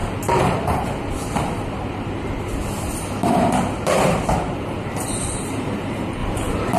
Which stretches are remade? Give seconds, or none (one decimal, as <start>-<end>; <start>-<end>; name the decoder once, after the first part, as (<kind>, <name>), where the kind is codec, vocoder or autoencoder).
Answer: 0.0-6.8 (vocoder, BigVGAN v2)

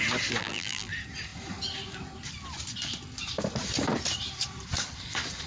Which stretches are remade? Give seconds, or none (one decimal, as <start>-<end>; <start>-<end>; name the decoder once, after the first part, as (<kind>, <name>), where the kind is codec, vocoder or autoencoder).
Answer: 0.4-0.9 (vocoder, BigVGAN v2)

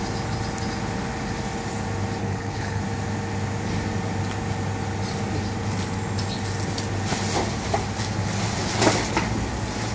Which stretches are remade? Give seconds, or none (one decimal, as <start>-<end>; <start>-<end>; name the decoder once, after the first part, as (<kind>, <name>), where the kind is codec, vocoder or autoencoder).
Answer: 2.2-2.8 (codec, HILCodec)